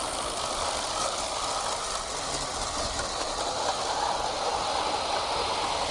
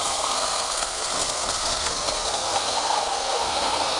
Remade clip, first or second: second